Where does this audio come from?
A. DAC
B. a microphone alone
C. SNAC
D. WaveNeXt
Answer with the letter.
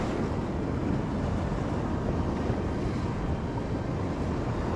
B